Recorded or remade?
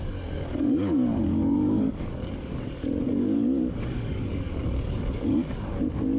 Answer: remade